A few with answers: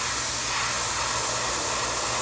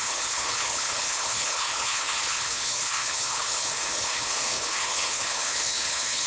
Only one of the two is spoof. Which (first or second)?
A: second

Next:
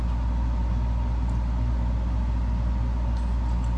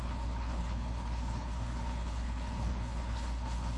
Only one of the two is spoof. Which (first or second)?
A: second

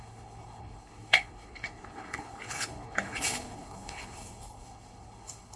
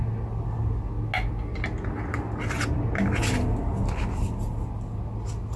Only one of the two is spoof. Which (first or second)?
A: first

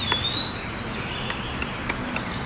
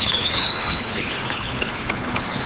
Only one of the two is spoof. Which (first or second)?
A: second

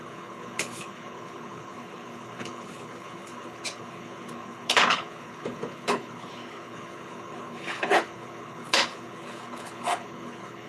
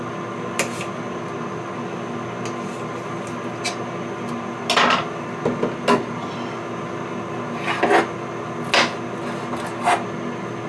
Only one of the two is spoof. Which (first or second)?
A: first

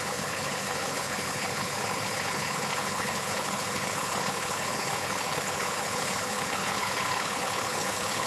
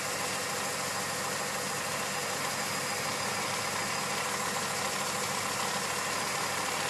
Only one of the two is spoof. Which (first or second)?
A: first